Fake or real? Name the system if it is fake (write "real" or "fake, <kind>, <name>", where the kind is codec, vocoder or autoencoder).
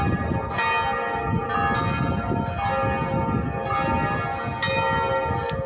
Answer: real